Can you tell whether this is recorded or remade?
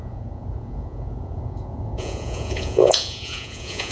remade